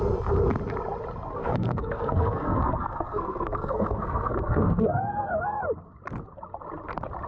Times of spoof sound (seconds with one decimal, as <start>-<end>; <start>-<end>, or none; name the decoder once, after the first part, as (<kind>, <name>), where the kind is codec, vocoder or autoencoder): 1.4-5.6 (codec, SNAC)